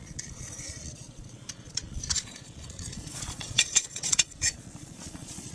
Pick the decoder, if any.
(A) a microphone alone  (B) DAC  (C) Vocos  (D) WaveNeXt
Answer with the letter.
C